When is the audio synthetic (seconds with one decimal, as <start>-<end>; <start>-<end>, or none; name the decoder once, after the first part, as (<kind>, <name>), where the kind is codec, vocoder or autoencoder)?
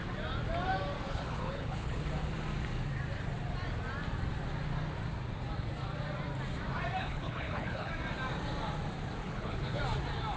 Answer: 1.1-2.0 (codec, HILCodec); 7.0-7.9; 9.2-9.8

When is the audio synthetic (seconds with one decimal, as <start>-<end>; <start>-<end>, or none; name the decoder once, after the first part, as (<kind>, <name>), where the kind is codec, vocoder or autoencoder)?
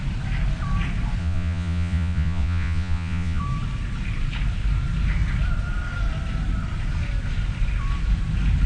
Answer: 1.2-3.4 (vocoder, Vocos)